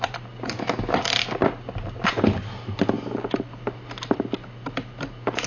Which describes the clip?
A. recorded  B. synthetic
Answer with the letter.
A